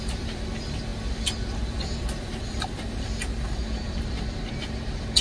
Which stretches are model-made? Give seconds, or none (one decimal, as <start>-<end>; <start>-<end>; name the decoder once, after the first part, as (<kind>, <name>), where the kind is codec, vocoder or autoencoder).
0.0-5.2 (vocoder, BigVGAN v2)